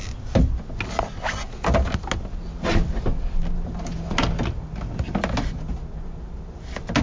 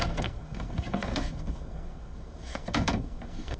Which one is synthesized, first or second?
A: second